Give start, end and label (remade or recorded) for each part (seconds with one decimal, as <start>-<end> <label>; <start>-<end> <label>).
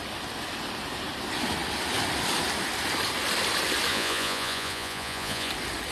0.0-3.9 recorded; 3.9-5.5 remade; 5.5-5.9 recorded